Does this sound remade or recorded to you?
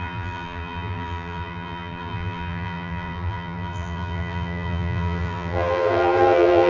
remade